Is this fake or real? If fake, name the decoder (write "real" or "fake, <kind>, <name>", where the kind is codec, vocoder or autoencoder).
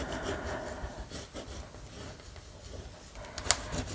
real